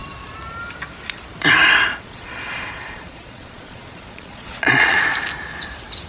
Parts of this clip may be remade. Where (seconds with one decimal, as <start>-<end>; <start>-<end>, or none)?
1.9-5.0